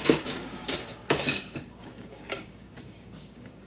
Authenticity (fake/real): fake